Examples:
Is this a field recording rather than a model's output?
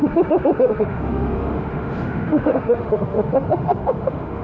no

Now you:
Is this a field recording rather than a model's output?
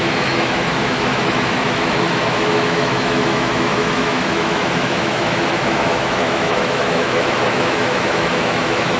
no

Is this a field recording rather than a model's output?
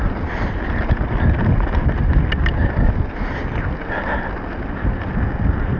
yes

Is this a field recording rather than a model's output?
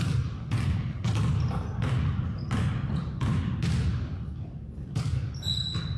yes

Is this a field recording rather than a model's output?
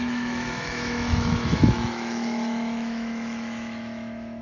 no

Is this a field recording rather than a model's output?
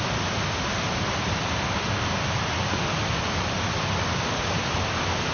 yes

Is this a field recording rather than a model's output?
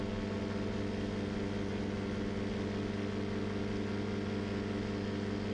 yes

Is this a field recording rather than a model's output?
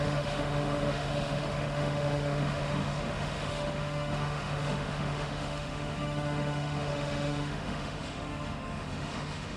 no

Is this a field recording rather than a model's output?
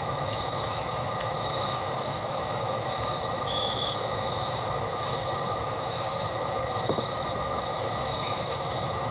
no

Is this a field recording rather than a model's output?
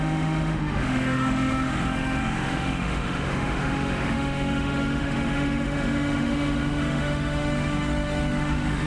no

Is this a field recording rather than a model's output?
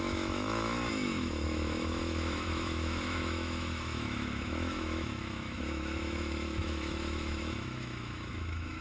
no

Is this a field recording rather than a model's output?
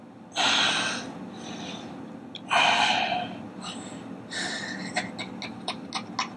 yes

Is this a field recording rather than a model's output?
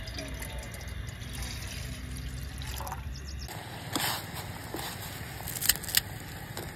yes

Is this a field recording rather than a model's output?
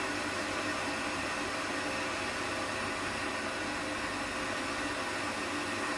yes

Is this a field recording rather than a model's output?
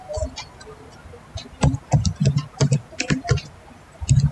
yes